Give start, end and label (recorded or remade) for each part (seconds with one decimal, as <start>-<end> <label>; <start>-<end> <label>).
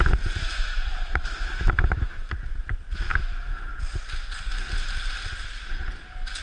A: 0.0-0.4 recorded; 0.4-2.3 remade; 2.3-3.1 recorded; 3.1-3.7 remade; 3.7-6.4 recorded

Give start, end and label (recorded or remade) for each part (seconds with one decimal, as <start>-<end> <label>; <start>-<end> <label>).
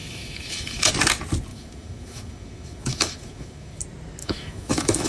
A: 0.0-0.9 remade; 0.9-1.5 recorded; 1.5-3.8 remade; 3.8-4.2 recorded; 4.2-5.1 remade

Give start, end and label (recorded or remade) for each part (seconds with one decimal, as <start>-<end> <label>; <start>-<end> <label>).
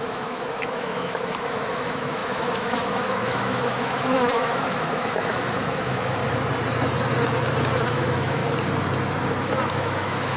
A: 0.0-6.2 remade; 6.2-7.9 recorded; 7.9-8.4 remade; 8.4-9.7 recorded; 9.7-10.4 remade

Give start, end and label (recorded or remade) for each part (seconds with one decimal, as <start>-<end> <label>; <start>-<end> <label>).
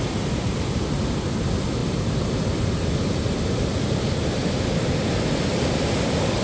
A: 0.0-6.4 recorded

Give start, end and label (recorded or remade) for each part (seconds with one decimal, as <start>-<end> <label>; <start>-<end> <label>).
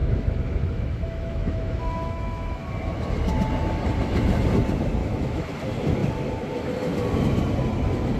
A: 0.0-2.7 remade; 2.7-5.0 recorded; 5.0-5.5 remade; 5.5-8.2 recorded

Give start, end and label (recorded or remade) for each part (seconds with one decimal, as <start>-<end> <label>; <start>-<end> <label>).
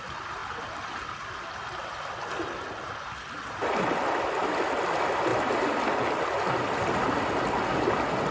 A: 0.0-8.3 recorded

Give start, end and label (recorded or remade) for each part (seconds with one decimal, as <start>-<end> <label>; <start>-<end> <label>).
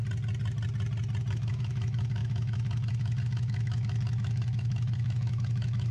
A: 0.0-1.3 recorded; 1.3-5.9 remade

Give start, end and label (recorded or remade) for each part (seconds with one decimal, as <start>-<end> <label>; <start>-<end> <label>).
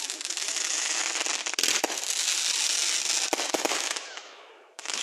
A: 0.0-1.0 remade; 1.0-3.5 recorded; 3.5-5.0 remade